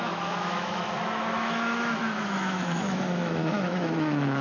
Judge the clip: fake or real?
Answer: fake